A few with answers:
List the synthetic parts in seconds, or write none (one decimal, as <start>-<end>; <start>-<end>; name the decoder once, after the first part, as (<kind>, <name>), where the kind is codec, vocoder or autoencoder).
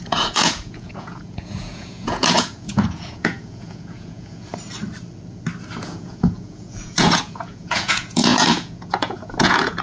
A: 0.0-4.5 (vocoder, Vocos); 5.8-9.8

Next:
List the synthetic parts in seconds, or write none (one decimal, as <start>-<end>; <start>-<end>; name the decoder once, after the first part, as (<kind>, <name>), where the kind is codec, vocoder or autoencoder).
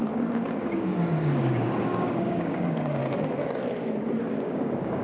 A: 0.6-3.0 (codec, DAC); 4.3-5.0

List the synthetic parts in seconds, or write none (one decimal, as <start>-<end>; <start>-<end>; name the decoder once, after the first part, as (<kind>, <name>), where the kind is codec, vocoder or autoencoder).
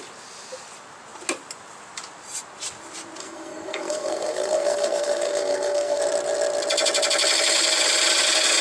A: 3.2-6.0 (codec, SNAC)